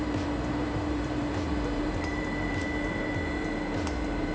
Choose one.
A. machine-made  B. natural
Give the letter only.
A